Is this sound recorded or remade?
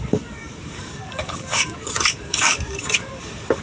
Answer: remade